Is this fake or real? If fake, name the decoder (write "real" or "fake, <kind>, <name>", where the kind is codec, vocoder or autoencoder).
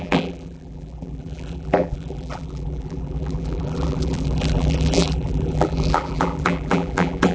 fake, vocoder, BigVGAN v2